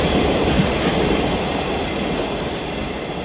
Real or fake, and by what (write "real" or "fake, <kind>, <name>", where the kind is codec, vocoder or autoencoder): real